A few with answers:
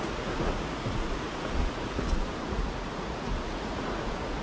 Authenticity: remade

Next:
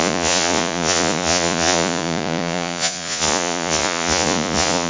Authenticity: remade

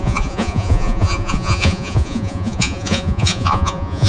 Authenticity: remade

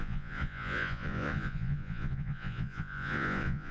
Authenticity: remade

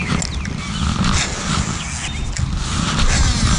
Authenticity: recorded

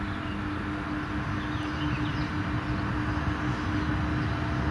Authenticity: recorded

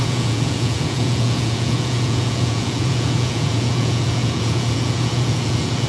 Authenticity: remade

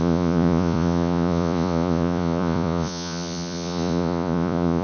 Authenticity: remade